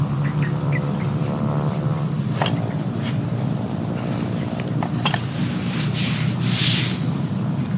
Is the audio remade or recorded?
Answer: recorded